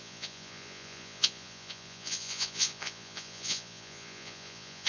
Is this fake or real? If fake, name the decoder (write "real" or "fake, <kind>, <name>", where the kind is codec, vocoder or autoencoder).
fake, vocoder, Vocos